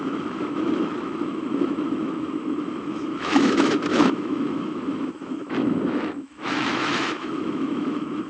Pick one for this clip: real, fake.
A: fake